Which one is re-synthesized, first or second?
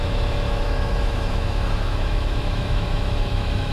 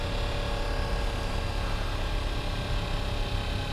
first